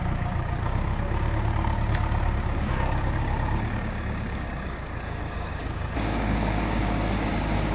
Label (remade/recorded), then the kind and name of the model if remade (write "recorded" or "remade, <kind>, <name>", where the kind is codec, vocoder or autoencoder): remade, codec, DAC